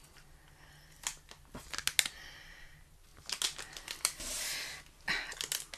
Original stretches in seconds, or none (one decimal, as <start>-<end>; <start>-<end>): 0.0-5.8